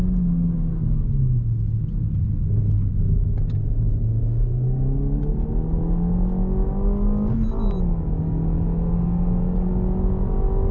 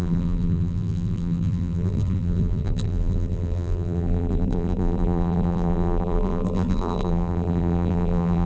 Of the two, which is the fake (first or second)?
second